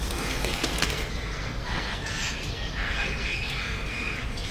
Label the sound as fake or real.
fake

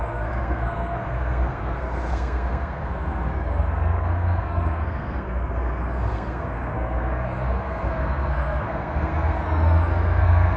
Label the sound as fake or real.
fake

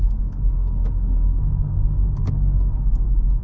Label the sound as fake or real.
fake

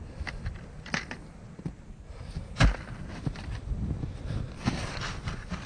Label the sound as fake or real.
real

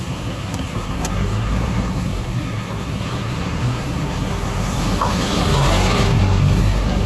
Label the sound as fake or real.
fake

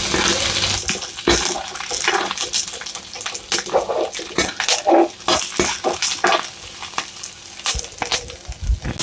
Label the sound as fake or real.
real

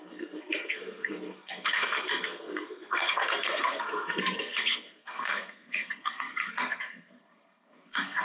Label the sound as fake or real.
fake